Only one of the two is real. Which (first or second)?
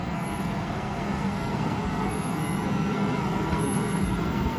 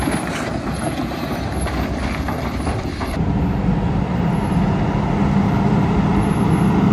second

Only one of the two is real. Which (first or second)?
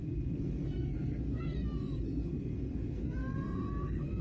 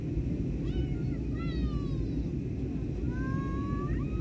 second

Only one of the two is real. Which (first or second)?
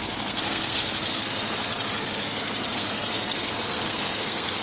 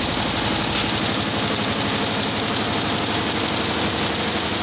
second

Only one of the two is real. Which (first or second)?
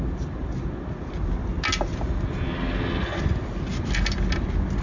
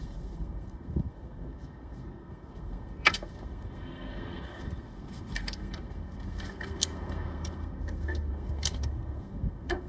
first